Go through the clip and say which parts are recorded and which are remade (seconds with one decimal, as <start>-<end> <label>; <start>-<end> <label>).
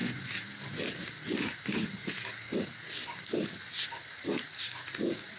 0.0-5.4 remade